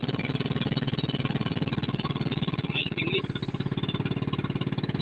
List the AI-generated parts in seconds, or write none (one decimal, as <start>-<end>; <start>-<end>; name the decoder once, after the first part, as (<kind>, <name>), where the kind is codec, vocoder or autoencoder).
0.0-3.0 (vocoder, WaveNeXt)